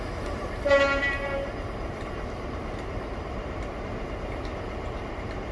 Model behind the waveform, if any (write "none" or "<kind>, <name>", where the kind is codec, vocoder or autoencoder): vocoder, BigVGAN v2